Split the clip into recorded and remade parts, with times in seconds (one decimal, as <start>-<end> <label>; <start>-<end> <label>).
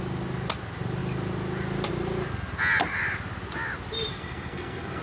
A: 0.0-4.1 recorded; 4.1-5.0 remade